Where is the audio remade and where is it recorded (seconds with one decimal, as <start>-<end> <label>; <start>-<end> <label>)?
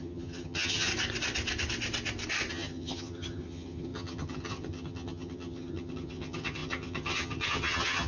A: 0.0-0.9 remade; 0.9-2.5 recorded; 2.5-8.1 remade